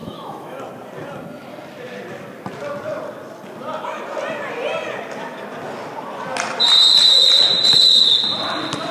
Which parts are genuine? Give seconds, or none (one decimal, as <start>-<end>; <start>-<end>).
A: 0.6-8.9